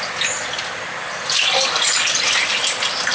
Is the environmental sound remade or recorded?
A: recorded